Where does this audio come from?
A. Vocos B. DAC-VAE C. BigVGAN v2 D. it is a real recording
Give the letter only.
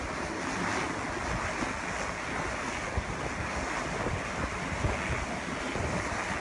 D